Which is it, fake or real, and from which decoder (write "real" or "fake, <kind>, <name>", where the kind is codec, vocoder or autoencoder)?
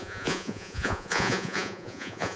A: fake, vocoder, Vocos